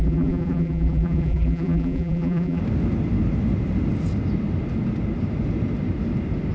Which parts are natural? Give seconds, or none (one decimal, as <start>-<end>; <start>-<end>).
2.6-6.5